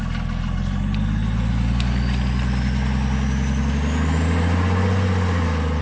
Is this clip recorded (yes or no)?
yes